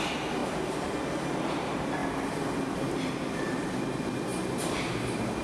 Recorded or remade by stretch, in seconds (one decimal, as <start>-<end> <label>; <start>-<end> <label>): 0.0-5.4 recorded